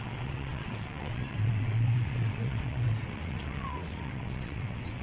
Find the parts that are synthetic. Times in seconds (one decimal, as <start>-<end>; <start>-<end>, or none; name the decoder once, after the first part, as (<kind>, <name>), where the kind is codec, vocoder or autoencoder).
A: 0.0-5.0 (vocoder, WaveNeXt)